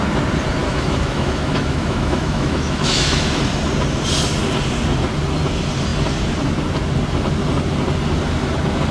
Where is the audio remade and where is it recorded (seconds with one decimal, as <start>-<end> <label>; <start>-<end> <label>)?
0.0-0.6 recorded; 0.6-3.4 remade; 3.4-8.9 recorded